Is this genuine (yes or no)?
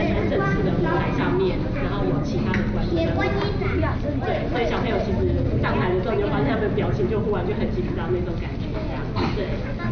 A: yes